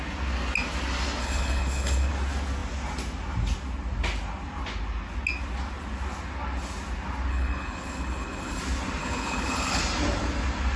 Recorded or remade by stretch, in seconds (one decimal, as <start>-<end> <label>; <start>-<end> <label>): 0.0-1.2 recorded; 1.2-2.1 remade; 2.1-7.3 recorded; 7.3-8.6 remade; 8.6-9.0 recorded; 9.0-9.8 remade; 9.8-10.8 recorded